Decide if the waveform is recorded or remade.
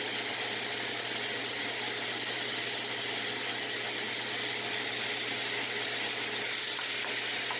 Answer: recorded